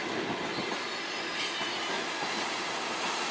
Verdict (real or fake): real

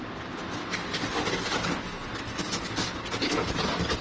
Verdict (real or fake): real